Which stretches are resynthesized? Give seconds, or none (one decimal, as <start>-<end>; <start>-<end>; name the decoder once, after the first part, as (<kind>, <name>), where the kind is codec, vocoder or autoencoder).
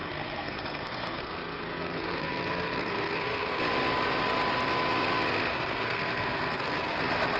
0.0-3.6 (codec, SNAC); 5.5-7.0